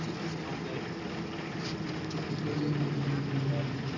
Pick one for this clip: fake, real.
real